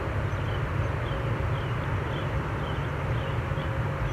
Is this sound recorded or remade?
recorded